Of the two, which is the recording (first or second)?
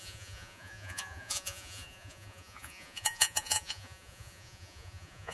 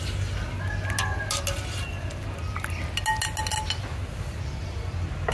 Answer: second